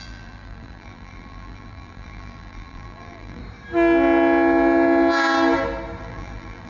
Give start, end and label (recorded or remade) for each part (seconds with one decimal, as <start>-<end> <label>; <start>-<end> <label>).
0.0-3.4 remade; 3.4-6.0 recorded; 6.0-6.7 remade